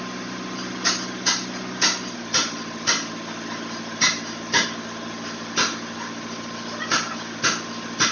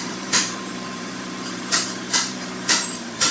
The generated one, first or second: second